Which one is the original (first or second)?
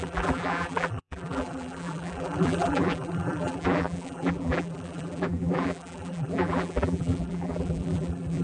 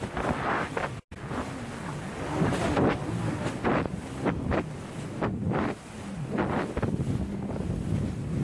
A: second